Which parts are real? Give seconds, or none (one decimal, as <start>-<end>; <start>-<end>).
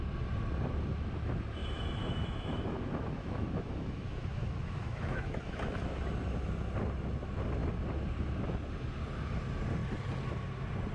0.0-1.6; 6.0-10.9